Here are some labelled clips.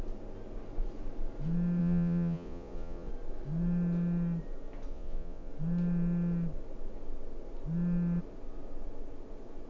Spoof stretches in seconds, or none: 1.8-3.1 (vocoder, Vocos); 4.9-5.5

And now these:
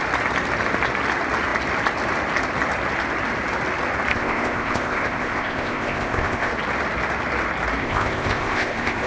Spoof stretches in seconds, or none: 4.1-6.5 (codec, ZipCodec); 7.8-9.1

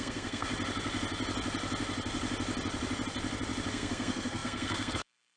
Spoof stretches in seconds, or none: 0.0-0.5 (codec, SNAC); 3.7-5.4